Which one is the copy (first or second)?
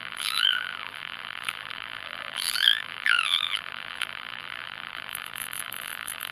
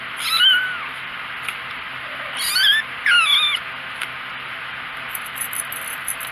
first